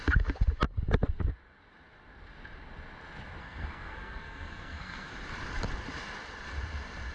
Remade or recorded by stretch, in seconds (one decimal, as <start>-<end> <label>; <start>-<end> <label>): 0.0-3.4 recorded; 3.4-5.1 remade; 5.1-7.1 recorded